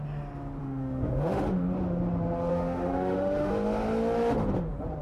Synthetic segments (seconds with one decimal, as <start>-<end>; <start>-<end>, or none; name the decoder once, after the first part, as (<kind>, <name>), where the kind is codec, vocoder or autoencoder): 0.6-1.4 (autoencoder, DAC-VAE); 2.5-3.5